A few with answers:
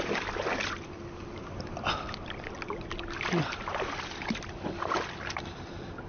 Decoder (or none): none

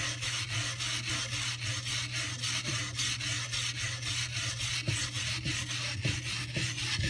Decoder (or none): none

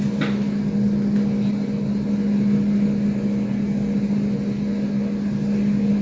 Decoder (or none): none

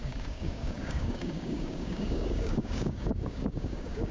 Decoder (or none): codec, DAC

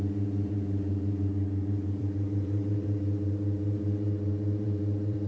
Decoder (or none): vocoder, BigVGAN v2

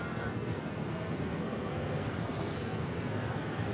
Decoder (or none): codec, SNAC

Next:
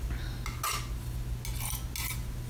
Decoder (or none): none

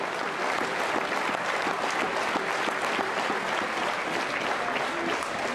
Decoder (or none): none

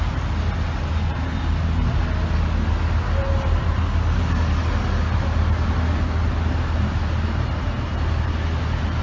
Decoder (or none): none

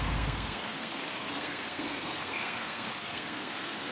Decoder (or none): codec, SNAC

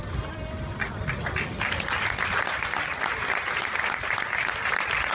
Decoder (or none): none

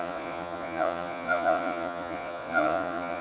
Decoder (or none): vocoder, Vocos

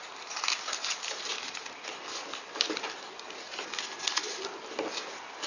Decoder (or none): none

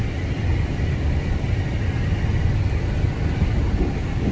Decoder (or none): none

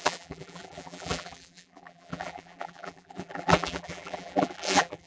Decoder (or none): vocoder, BigVGAN v2